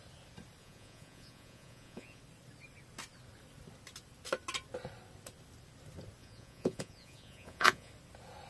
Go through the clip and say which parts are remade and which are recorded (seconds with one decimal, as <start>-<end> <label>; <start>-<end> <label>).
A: 0.0-0.6 recorded; 0.6-2.2 remade; 2.2-6.2 recorded; 6.2-7.9 remade; 7.9-8.5 recorded